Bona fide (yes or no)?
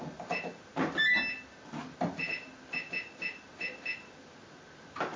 yes